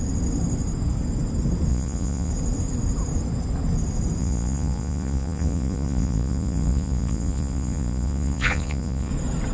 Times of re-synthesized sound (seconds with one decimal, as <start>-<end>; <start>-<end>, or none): 1.7-2.3; 4.2-9.1